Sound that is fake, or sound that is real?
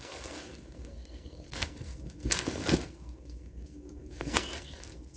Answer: fake